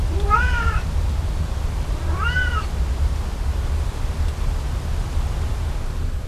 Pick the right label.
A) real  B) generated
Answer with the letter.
A